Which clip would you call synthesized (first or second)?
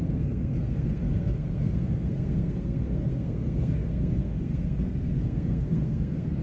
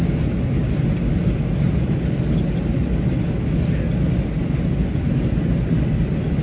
first